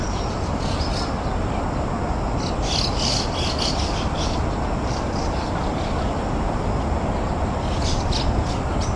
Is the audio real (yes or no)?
yes